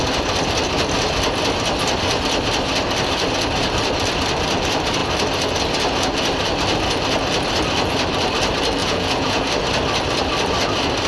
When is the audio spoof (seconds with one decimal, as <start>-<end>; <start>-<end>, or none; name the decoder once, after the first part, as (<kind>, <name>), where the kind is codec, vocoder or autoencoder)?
8.8-9.5 (vocoder, Vocos)